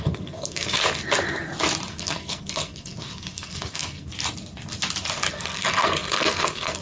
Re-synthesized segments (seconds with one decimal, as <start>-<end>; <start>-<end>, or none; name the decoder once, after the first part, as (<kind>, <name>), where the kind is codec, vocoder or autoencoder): 0.0-0.8 (codec, SNAC); 1.9-4.1; 5.3-6.8